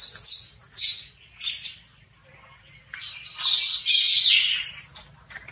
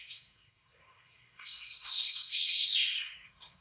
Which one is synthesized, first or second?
second